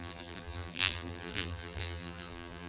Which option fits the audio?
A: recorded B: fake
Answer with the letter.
B